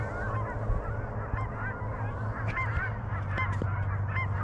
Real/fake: real